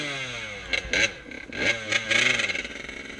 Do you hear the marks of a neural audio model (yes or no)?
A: no